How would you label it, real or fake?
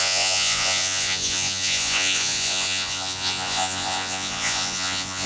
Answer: fake